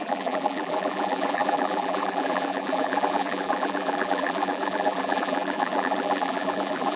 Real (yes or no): no